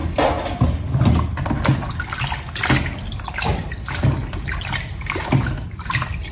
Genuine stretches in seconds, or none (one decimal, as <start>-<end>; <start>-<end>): 0.0-6.3